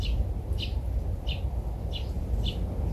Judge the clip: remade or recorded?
recorded